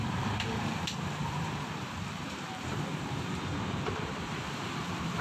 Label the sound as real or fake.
fake